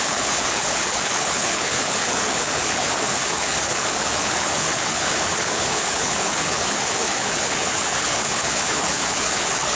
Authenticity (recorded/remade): remade